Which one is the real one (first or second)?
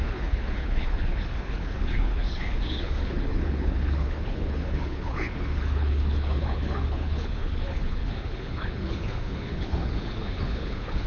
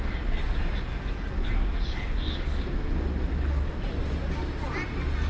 second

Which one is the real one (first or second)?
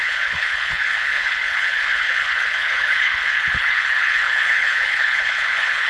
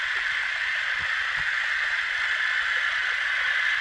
second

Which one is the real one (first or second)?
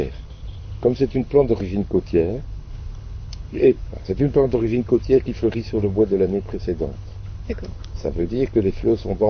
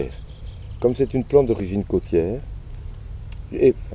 second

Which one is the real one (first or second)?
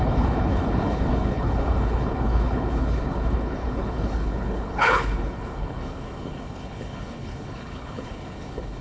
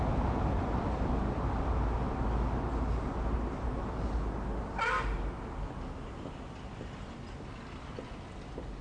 second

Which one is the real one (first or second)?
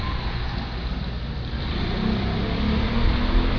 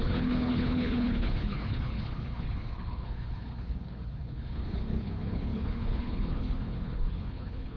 first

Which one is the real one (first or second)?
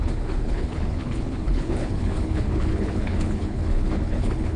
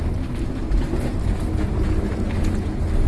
second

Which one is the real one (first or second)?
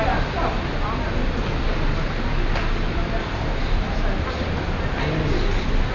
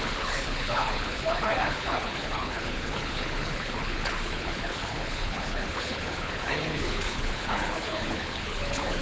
first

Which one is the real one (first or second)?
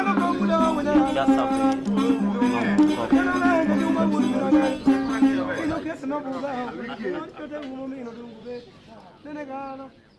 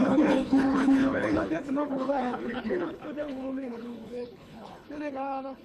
first